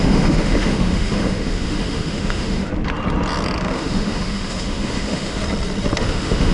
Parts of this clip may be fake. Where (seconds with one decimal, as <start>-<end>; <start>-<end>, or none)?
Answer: 0.0-2.7; 3.6-5.4; 6.0-6.5